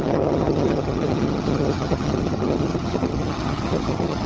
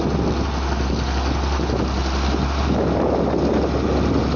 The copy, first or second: first